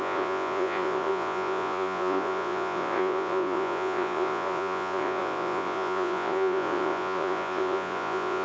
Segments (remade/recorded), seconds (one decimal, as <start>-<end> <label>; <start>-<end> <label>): 0.0-8.4 remade